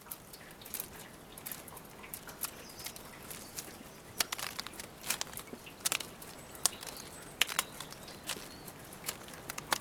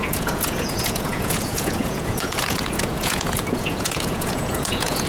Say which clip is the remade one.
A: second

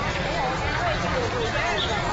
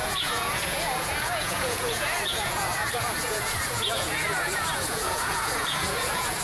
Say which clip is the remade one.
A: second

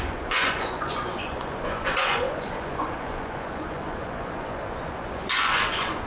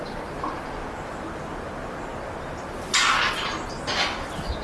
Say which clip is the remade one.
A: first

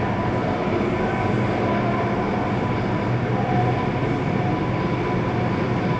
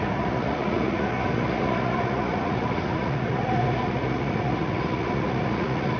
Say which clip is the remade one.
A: second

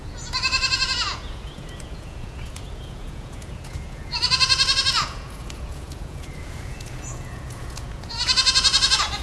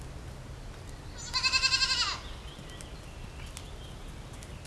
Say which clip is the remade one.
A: first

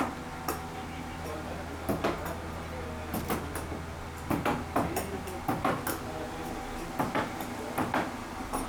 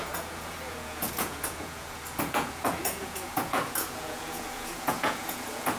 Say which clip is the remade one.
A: second